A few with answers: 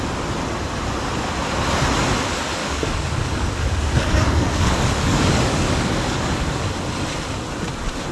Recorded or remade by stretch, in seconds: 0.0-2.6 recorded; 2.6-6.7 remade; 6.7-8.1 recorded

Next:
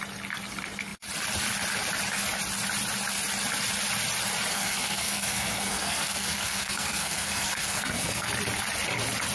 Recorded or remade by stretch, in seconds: 0.0-4.5 recorded; 4.5-8.3 remade; 8.3-9.3 recorded

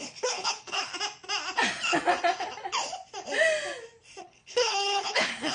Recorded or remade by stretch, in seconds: 0.0-0.9 remade; 0.9-4.2 recorded; 4.2-5.5 remade

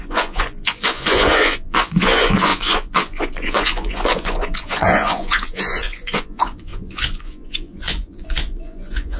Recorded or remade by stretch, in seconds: 0.0-9.2 remade

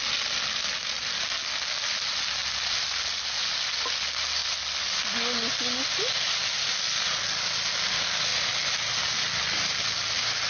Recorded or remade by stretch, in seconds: 0.0-10.5 recorded

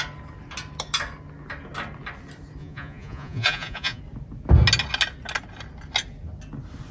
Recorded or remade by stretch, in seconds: 0.0-2.6 recorded; 2.6-4.0 remade; 4.0-6.9 recorded